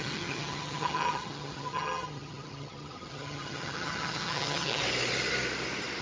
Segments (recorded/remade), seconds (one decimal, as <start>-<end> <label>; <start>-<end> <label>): 0.0-4.8 remade; 4.8-6.0 recorded